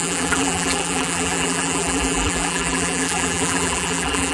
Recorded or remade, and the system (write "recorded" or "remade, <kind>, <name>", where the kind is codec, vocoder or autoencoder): remade, vocoder, BigVGAN v2